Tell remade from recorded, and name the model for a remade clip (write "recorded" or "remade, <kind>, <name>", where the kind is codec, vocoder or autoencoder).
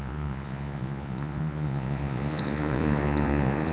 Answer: remade, vocoder, Vocos